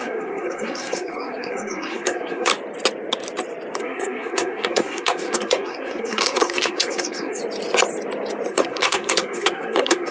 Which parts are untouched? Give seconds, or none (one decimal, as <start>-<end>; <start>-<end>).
2.5-3.8; 7.4-8.5